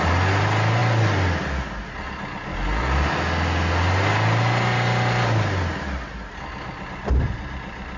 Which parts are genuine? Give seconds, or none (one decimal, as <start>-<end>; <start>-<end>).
0.0-8.0